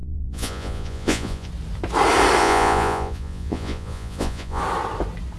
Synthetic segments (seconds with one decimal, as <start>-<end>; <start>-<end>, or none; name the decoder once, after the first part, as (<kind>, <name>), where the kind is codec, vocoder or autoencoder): 0.0-1.5 (vocoder, Vocos); 2.4-4.6